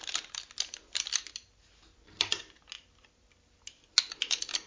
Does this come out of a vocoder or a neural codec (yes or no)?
no